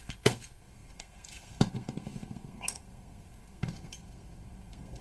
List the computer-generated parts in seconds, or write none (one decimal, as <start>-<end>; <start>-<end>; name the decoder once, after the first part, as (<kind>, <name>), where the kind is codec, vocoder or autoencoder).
0.0-5.0 (codec, SNAC)